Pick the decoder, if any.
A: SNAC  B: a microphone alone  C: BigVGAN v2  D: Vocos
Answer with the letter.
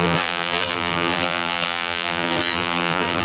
C